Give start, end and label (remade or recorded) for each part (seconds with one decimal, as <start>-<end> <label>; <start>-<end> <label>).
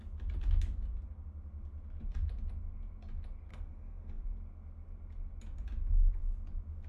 0.0-3.5 recorded; 3.5-4.2 remade; 4.2-6.9 recorded